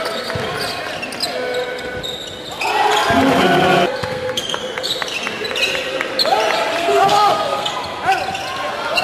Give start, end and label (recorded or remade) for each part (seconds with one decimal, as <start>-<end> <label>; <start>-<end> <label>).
0.0-4.0 recorded; 4.0-4.6 remade; 4.6-6.8 recorded; 6.8-7.7 remade; 7.7-9.0 recorded